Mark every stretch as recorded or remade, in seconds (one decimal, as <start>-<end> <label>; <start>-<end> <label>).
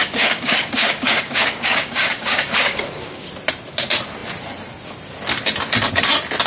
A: 0.0-3.3 remade; 3.3-6.5 recorded